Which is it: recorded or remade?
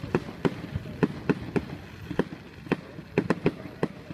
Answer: recorded